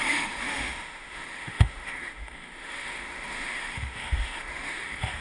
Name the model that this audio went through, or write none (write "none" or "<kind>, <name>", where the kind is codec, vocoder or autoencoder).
autoencoder, DAC-VAE